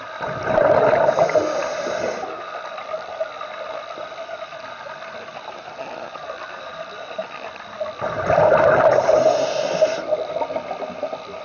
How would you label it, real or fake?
real